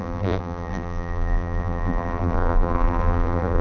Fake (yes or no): yes